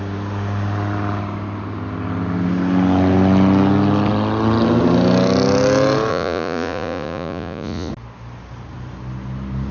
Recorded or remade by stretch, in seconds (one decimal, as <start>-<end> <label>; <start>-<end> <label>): 0.0-6.1 recorded; 6.1-7.9 remade; 7.9-9.7 recorded